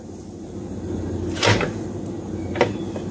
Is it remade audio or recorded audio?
recorded